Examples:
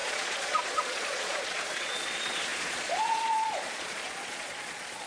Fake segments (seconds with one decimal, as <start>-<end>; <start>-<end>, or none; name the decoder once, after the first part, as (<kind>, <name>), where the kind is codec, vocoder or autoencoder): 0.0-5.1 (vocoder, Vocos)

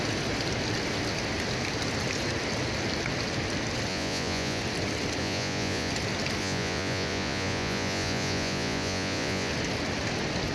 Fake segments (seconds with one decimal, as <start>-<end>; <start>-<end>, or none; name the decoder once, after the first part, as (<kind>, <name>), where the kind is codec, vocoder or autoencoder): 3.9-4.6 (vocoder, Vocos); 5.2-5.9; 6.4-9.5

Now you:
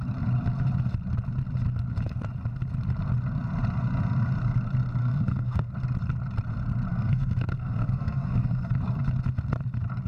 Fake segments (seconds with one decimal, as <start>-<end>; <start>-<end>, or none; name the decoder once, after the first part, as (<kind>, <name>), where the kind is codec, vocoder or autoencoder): 5.0-5.7 (codec, SNAC); 6.9-8.7

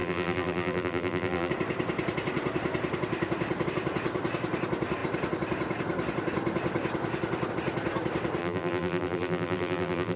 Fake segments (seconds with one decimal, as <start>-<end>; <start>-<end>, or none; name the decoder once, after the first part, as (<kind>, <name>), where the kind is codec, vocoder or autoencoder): 0.0-1.5 (vocoder, BigVGAN v2); 8.4-10.2

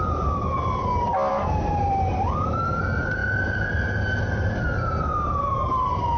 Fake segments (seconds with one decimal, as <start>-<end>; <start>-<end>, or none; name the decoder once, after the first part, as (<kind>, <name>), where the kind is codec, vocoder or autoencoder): 0.0-0.8 (vocoder, BigVGAN v2); 1.3-3.2; 4.2-6.2

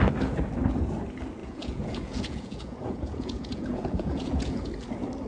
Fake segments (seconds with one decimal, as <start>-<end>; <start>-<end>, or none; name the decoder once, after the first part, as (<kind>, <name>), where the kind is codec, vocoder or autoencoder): 1.4-4.6 (vocoder, Vocos)

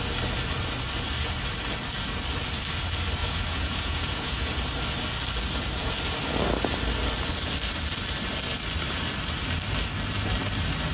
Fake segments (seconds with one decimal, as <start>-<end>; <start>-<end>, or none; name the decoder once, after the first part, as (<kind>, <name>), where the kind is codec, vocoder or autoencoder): 3.2-4.5 (vocoder, Vocos)

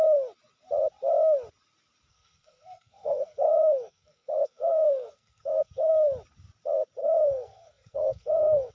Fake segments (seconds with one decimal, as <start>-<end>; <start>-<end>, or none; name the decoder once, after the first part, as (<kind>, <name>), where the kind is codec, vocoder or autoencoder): 2.1-5.9 (codec, SNAC); 7.0-8.7